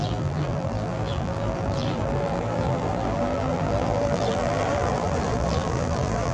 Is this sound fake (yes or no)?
yes